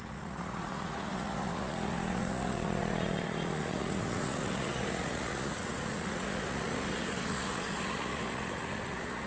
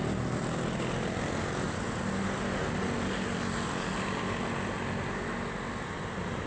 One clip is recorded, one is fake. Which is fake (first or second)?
first